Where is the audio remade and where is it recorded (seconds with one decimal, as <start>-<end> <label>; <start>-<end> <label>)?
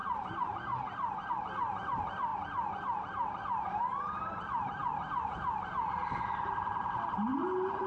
0.0-1.3 remade; 1.3-4.8 recorded; 4.8-6.1 remade; 6.1-7.3 recorded; 7.3-7.9 remade